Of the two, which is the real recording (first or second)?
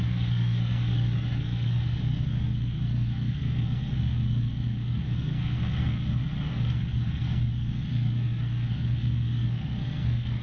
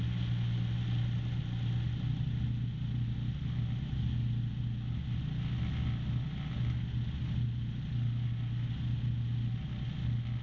second